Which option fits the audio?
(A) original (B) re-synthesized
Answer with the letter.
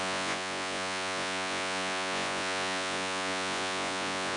B